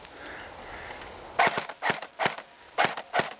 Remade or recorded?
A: recorded